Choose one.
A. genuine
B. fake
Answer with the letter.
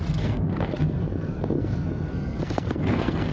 B